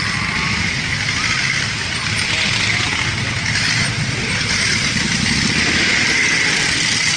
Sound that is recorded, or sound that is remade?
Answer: recorded